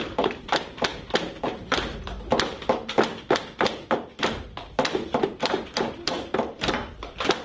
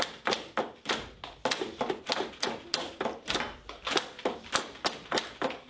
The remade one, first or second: first